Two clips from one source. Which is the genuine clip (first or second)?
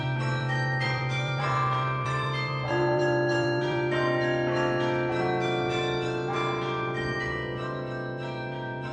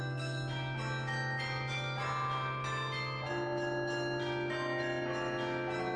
second